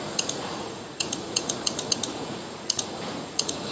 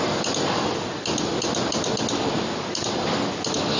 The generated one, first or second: first